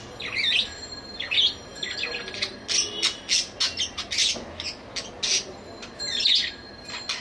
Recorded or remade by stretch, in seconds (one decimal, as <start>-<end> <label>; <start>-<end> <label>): 0.0-7.2 recorded